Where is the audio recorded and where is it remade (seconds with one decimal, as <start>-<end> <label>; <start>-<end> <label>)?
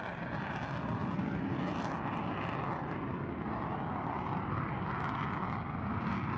0.0-6.4 recorded